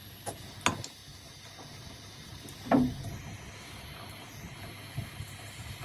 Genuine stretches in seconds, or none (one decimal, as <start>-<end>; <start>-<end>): 0.0-5.8